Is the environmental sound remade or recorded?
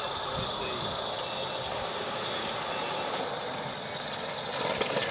recorded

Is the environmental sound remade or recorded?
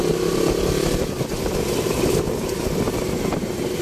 recorded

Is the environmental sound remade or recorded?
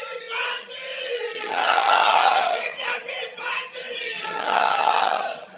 remade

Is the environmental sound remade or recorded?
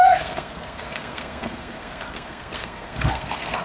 remade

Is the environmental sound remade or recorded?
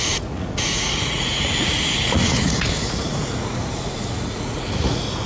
remade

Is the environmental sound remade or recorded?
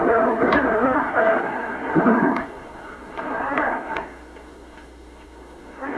remade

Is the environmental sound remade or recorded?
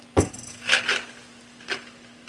remade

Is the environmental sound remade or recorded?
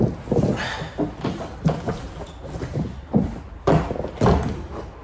recorded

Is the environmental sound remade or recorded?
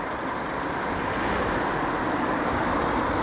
recorded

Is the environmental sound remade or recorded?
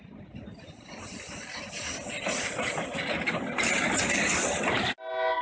recorded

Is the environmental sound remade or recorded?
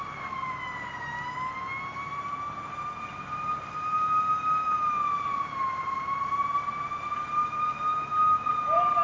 recorded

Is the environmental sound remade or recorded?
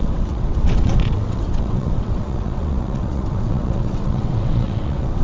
remade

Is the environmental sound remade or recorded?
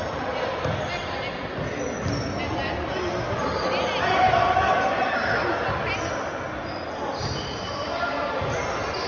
recorded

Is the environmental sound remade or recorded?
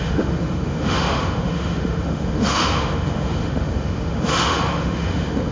remade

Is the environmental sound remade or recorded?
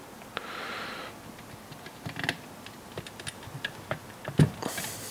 recorded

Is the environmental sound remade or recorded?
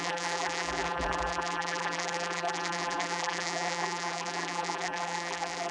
remade